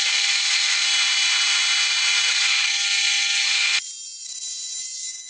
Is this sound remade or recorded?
recorded